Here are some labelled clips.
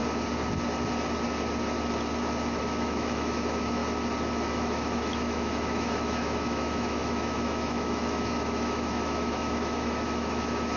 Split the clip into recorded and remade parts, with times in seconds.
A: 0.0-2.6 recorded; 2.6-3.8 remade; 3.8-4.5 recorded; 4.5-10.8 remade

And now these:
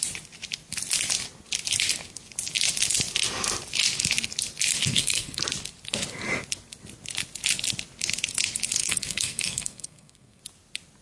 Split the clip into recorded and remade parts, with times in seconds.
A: 0.0-4.8 recorded; 4.8-5.4 remade; 5.4-8.8 recorded; 8.8-10.4 remade; 10.4-11.0 recorded